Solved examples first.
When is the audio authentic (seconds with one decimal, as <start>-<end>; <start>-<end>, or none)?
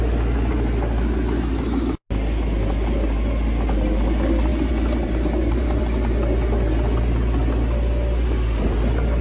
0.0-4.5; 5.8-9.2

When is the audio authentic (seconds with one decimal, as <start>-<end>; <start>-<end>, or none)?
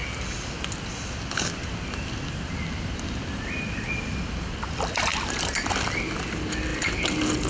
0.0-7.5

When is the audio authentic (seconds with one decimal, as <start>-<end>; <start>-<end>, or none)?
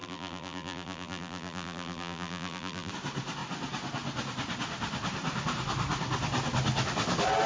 2.9-7.5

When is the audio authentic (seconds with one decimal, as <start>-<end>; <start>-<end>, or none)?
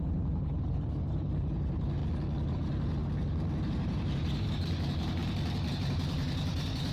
2.0-2.5; 3.0-3.7; 5.2-5.7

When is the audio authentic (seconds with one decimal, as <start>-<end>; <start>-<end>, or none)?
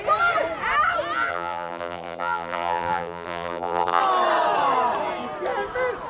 0.0-1.3; 4.0-6.1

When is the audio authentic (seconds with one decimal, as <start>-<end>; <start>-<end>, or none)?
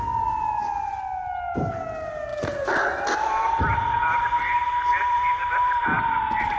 0.0-2.3; 4.2-4.9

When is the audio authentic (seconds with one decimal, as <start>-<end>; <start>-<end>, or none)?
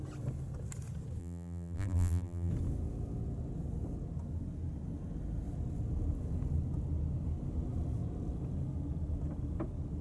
0.0-1.2; 2.5-10.0